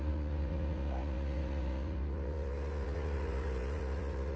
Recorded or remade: remade